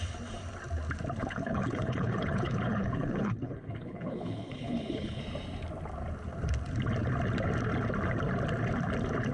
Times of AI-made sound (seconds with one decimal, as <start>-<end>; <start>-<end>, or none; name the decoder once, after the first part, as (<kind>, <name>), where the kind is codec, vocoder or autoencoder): 1.2-5.2 (codec, HILCodec)